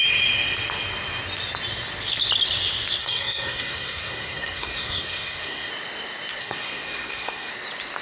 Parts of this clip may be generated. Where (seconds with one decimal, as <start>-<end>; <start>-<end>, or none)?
3.0-5.7; 6.4-7.5